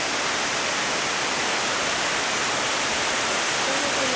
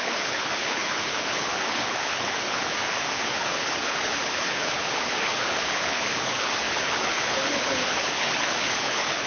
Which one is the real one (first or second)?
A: first